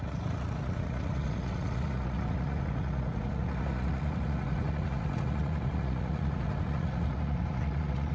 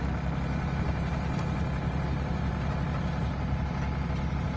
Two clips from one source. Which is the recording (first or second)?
second